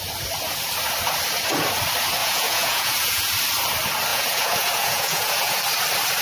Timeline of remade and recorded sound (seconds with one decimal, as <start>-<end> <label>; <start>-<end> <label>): 0.0-2.2 recorded; 2.2-3.3 remade; 3.3-4.1 recorded; 4.1-5.6 remade; 5.6-6.2 recorded